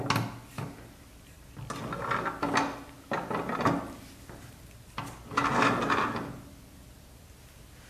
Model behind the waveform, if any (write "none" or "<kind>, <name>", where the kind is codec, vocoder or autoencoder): none